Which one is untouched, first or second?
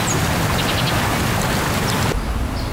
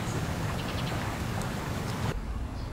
first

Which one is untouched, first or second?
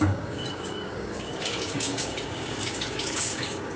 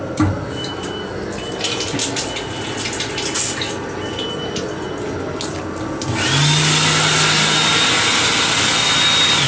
second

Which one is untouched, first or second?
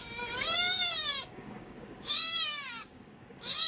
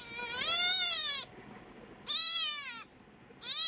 second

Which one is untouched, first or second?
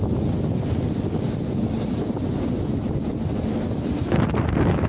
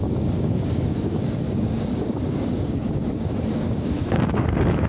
first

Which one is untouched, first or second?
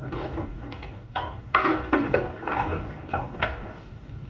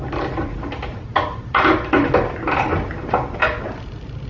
second